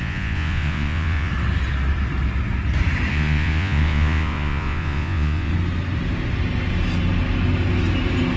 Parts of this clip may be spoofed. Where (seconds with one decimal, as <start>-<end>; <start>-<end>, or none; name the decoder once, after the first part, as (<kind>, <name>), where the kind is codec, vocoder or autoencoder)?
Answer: 0.0-1.3 (vocoder, Vocos); 3.1-5.5